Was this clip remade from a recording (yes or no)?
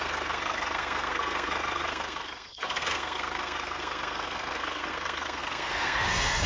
yes